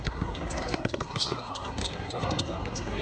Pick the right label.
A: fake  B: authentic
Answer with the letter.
A